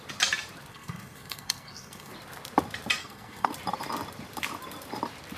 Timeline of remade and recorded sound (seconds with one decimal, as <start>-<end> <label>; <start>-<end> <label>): 0.0-0.7 recorded; 0.7-2.1 remade; 2.1-3.0 recorded; 3.0-3.5 remade; 3.5-5.4 recorded